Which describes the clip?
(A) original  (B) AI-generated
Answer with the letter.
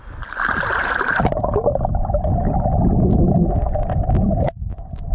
A